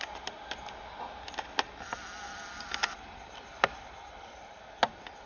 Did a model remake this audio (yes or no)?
no